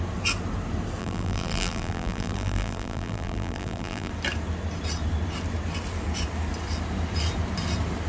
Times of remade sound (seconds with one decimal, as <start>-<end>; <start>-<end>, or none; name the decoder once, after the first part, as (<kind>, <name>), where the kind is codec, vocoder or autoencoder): 1.0-4.1 (vocoder, BigVGAN v2)